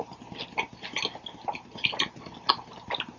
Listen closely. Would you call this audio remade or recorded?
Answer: recorded